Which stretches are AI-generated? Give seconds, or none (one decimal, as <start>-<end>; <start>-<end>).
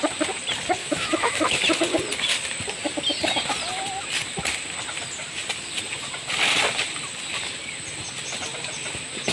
0.8-1.6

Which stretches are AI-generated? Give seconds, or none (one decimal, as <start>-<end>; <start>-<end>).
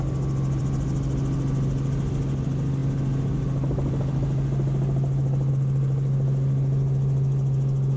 none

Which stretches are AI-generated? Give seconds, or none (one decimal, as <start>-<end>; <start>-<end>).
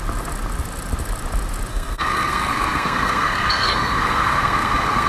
1.7-5.1